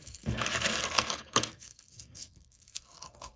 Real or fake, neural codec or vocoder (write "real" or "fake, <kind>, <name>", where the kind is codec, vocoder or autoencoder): fake, codec, SNAC